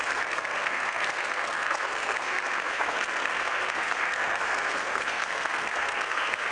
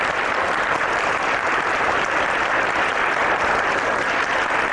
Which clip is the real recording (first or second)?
second